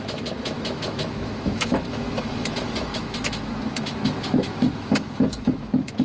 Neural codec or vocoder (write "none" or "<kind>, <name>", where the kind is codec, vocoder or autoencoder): autoencoder, DAC-VAE